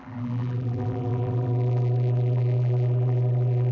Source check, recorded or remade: remade